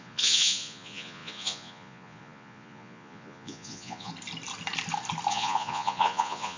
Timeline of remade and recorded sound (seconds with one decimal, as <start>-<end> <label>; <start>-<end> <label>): 0.0-4.1 remade; 4.1-5.3 recorded; 5.3-6.6 remade